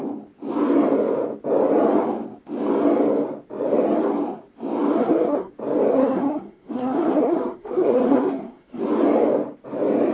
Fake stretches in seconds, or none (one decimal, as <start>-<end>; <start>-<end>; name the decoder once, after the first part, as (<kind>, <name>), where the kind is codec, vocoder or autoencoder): 5.0-5.5 (codec, SNAC); 5.9-8.8